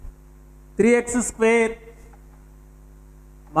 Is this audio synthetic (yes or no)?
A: no